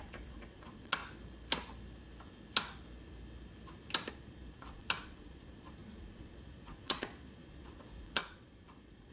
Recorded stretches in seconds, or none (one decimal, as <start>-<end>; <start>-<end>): 1.0-4.1